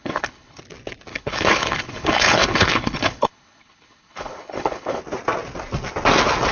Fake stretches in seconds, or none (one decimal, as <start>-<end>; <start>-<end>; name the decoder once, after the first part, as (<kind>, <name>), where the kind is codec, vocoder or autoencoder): 0.0-0.6 (codec, HILCodec); 1.1-5.0